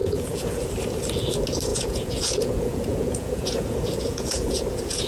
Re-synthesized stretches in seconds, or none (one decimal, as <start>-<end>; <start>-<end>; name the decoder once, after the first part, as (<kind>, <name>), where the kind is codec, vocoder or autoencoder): 0.0-0.6 (vocoder, Vocos); 1.7-5.1